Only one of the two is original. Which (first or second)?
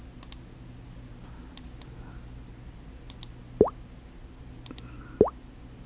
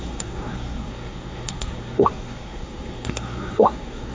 first